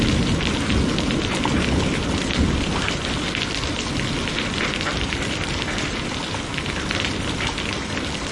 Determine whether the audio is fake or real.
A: fake